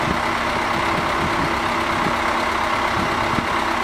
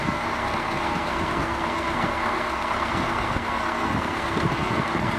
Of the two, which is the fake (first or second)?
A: second